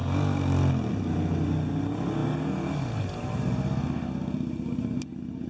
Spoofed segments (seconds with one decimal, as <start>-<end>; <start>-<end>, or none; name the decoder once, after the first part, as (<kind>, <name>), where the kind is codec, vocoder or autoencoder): none